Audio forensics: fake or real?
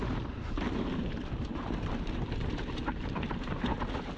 fake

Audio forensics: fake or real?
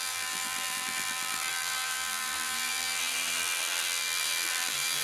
fake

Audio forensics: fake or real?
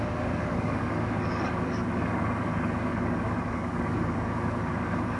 fake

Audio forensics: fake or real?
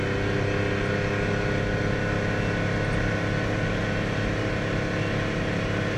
real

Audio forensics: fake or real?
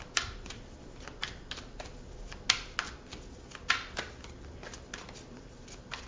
real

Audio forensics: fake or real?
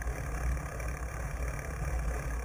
real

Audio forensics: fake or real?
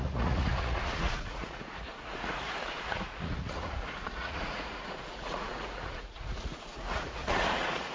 fake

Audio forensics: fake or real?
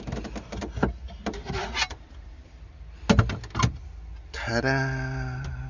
real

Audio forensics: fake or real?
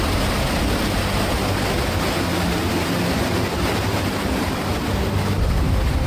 real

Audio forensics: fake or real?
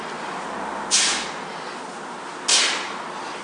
real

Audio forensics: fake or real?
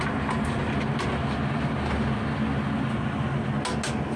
real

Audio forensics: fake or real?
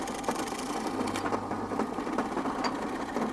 real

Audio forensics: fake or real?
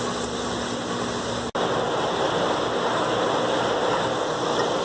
real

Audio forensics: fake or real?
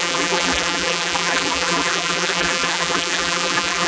fake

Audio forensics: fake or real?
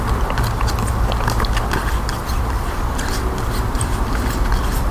real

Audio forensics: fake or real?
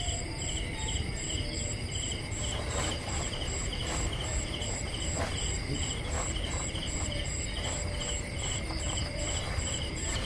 fake